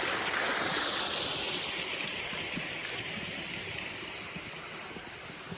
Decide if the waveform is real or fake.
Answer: real